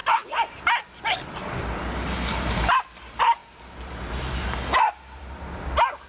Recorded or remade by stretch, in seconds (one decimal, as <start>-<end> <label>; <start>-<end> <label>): 0.0-6.1 recorded